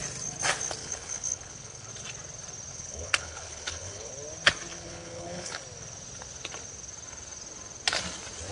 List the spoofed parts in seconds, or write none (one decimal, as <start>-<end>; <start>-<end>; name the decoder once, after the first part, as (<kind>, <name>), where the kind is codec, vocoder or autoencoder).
0.8-1.9 (codec, HILCodec); 2.7-4.1; 4.7-5.6